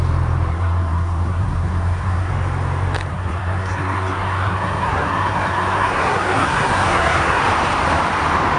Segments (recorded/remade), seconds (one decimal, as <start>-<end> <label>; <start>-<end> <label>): 0.0-0.5 recorded; 0.5-2.3 remade; 2.3-3.1 recorded; 3.1-7.4 remade; 7.4-8.6 recorded